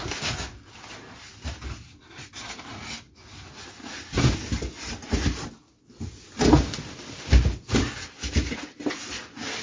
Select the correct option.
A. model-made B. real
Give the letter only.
B